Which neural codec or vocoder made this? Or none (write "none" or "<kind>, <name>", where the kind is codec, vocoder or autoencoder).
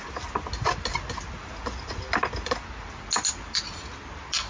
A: none